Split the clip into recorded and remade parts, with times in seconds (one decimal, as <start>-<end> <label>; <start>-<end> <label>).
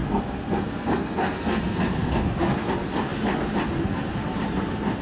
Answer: 0.0-2.7 remade; 2.7-5.0 recorded